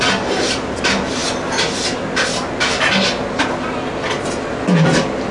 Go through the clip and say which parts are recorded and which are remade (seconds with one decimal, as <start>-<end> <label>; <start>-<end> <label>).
0.0-5.3 recorded